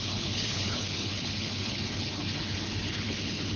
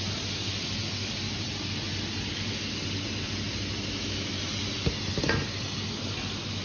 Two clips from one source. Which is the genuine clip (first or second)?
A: second